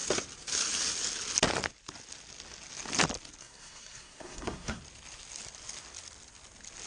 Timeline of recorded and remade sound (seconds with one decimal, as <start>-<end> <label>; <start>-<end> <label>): 0.0-3.4 recorded; 3.4-4.8 remade; 4.8-6.9 recorded